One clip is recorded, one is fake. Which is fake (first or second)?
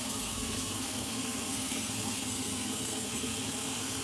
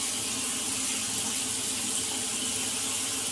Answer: first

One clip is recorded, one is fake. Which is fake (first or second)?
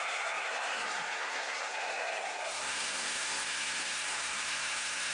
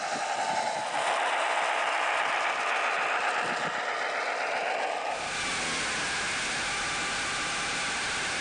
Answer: first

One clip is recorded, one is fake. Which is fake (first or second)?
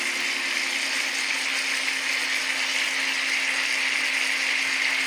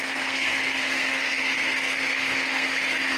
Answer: second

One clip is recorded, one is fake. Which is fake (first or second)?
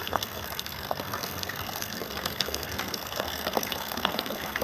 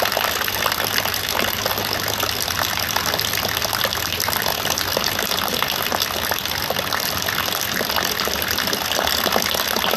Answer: first